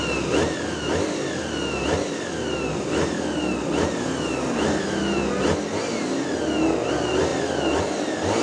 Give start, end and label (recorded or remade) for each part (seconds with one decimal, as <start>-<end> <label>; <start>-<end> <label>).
0.0-8.4 recorded